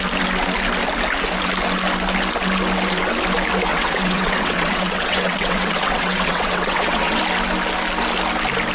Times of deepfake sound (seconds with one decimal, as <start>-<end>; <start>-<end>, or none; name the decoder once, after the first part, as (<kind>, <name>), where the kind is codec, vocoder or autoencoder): 3.7-7.2 (vocoder, WaveNeXt)